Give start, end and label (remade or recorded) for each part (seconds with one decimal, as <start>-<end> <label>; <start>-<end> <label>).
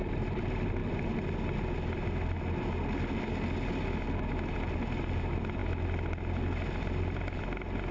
0.0-7.9 recorded